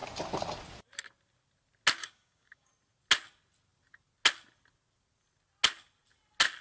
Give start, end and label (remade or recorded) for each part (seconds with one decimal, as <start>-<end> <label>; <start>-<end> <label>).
0.0-2.0 recorded; 2.0-2.7 remade; 2.7-6.6 recorded